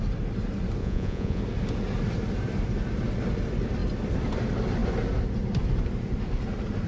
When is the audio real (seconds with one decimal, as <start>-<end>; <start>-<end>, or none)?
0.0-0.8; 1.4-6.9